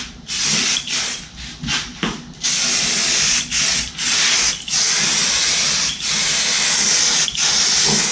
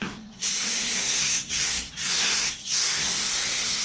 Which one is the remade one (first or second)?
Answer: second